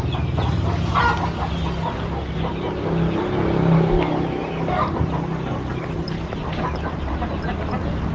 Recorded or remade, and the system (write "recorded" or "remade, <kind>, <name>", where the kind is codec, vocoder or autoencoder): recorded